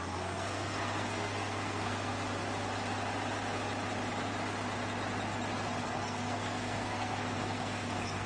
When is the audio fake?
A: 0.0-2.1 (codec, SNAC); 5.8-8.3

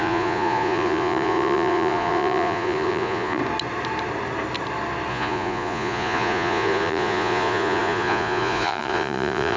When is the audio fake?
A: 0.0-3.4 (vocoder, Vocos); 5.1-9.6

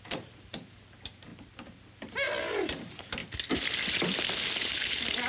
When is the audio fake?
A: 0.0-1.3 (vocoder, BigVGAN v2); 2.4-3.2; 4.7-5.3